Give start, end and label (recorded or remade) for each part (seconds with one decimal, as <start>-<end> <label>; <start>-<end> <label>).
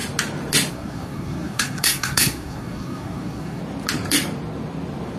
0.0-0.7 recorded; 0.7-3.6 remade; 3.6-5.2 recorded